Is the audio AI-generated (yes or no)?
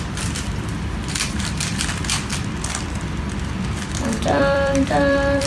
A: yes